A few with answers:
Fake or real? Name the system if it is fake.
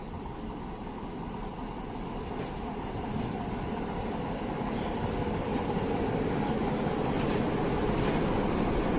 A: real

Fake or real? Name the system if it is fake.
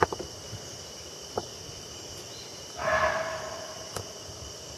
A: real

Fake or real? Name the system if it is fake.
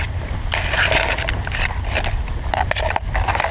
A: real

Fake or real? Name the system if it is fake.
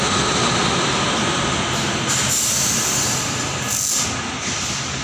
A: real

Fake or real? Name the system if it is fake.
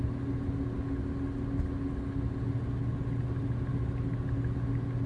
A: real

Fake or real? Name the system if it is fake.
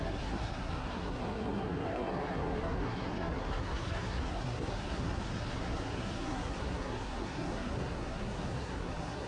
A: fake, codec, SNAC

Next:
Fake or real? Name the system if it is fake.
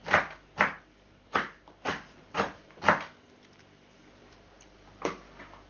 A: real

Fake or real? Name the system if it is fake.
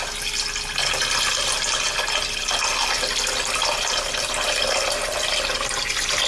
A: real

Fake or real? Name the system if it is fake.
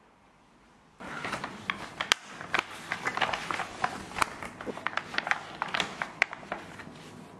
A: real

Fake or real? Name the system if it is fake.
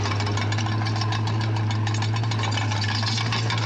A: real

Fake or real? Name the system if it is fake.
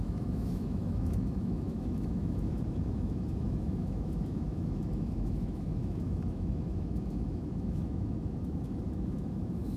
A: fake, autoencoder, DAC-VAE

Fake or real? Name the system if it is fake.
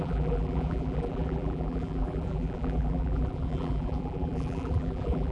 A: fake, vocoder, BigVGAN v2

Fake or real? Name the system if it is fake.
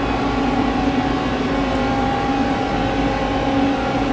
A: real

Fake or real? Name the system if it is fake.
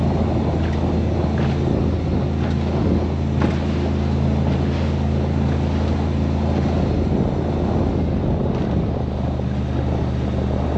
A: real